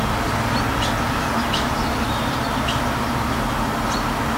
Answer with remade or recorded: recorded